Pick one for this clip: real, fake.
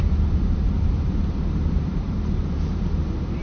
fake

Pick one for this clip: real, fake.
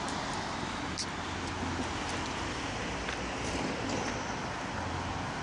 real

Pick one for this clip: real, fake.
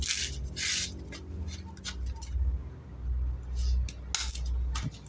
real